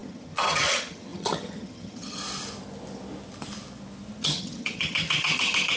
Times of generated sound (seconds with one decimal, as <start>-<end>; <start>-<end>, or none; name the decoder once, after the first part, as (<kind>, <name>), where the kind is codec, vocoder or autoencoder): 0.0-2.2 (vocoder, HiFi-GAN); 4.2-5.8